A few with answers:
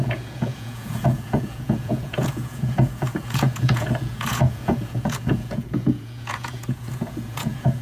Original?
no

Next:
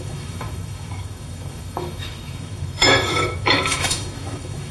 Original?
no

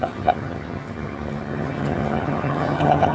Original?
no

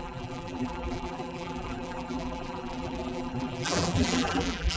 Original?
no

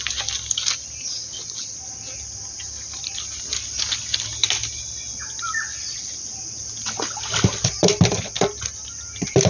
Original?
yes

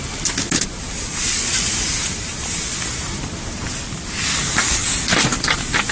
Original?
yes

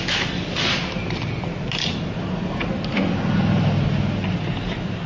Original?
yes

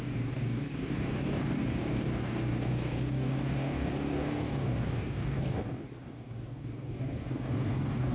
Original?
no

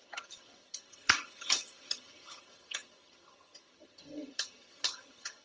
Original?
no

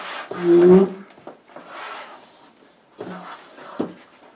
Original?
yes